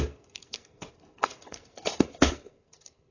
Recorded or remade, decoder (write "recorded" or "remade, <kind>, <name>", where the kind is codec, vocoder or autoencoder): remade, codec, SNAC